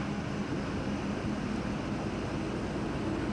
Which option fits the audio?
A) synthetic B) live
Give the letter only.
B